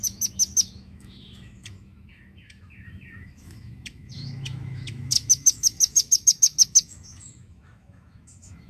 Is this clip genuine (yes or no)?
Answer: no